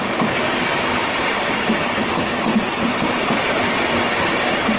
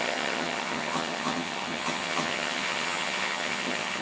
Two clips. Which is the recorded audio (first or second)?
first